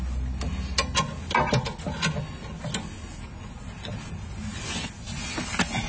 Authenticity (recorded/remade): recorded